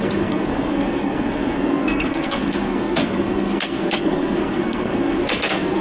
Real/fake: fake